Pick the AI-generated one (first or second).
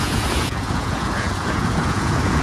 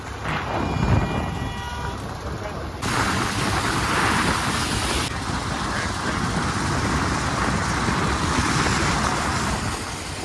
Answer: first